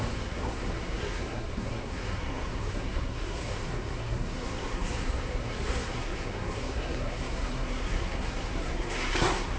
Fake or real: fake